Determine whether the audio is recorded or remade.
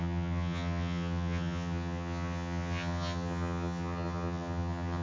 remade